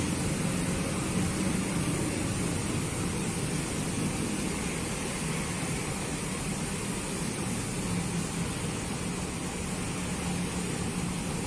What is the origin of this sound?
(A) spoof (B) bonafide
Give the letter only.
B